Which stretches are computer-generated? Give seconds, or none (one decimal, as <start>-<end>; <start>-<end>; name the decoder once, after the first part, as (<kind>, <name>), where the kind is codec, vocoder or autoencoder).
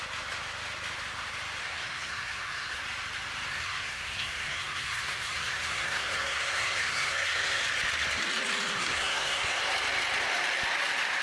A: 1.6-2.8 (codec, SNAC); 3.5-7.6; 8.8-9.6